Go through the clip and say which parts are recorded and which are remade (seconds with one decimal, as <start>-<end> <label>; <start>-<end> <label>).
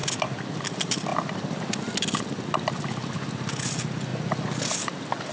0.0-5.3 recorded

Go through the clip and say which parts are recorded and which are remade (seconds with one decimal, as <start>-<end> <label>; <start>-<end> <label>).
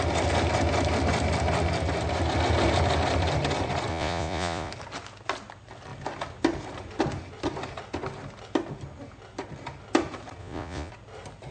0.0-3.9 recorded; 3.9-4.7 remade; 4.7-10.4 recorded; 10.4-10.9 remade; 10.9-11.5 recorded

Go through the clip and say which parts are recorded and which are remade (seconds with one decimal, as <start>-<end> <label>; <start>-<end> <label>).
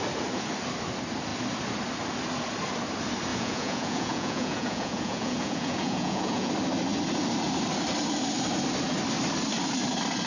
0.0-3.3 recorded; 3.3-6.5 remade; 6.5-10.3 recorded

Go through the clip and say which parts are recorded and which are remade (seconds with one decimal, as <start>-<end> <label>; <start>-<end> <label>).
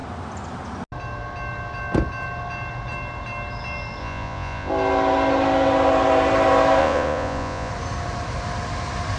0.0-4.0 recorded; 4.0-4.7 remade; 4.7-6.8 recorded; 6.8-7.7 remade; 7.7-9.2 recorded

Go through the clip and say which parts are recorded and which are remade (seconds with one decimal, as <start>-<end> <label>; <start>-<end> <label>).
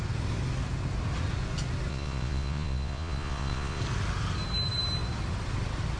0.0-1.9 recorded; 1.9-3.8 remade; 3.8-6.0 recorded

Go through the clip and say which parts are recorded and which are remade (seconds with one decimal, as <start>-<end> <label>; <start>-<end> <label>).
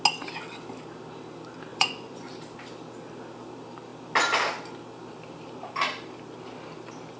0.0-1.7 recorded; 1.7-2.3 remade; 2.3-7.2 recorded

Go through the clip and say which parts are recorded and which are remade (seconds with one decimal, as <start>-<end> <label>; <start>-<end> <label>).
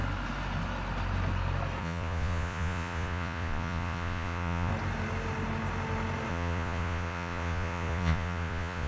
0.0-1.8 recorded; 1.8-4.7 remade; 4.7-6.3 recorded; 6.3-8.9 remade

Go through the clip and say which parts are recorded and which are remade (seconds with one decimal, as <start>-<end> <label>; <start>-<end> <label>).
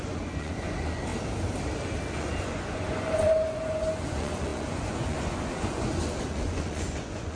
0.0-1.1 remade; 1.1-2.1 recorded; 2.1-7.4 remade